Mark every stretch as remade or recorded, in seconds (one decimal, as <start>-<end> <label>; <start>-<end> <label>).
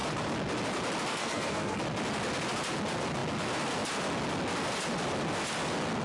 0.0-1.1 recorded; 1.1-1.8 remade; 1.8-6.0 recorded